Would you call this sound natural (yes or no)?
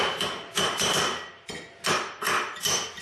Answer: yes